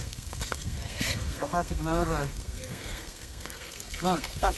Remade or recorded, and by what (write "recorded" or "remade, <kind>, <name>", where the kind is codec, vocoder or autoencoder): remade, codec, SNAC